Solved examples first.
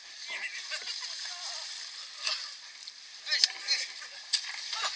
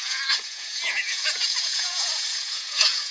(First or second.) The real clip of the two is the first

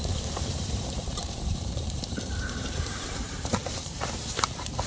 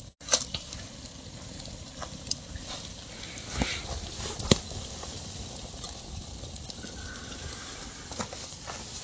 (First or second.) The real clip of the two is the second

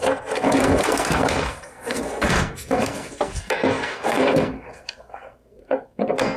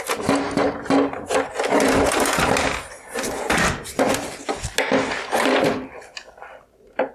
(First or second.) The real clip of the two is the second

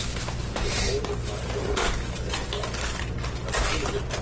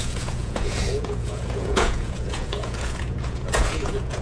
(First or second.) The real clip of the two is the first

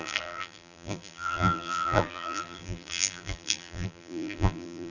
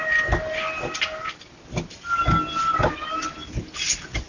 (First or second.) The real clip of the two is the second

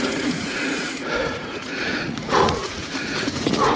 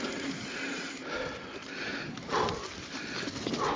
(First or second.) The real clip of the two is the second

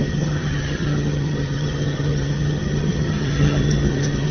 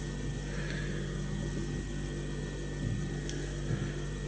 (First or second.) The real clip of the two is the second